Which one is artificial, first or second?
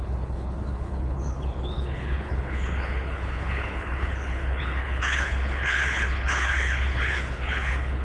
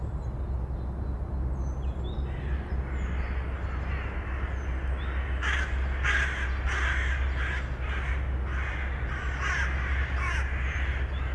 first